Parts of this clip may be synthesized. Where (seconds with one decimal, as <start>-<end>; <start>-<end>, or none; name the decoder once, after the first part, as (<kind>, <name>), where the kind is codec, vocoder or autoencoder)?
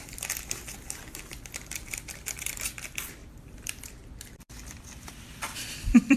3.2-6.2 (vocoder, BigVGAN v2)